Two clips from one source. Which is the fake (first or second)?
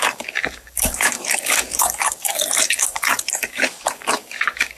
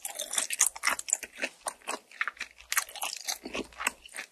first